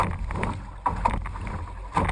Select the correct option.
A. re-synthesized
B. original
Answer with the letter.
B